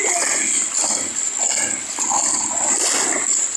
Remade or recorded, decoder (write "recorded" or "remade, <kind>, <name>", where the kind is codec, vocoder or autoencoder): recorded